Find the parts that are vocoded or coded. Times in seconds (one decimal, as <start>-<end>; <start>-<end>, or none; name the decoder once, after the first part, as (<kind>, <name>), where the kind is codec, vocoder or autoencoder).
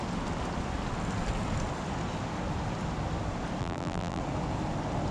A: 3.6-4.2 (vocoder, BigVGAN v2)